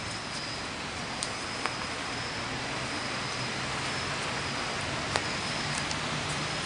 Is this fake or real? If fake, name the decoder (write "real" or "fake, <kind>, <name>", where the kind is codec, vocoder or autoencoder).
real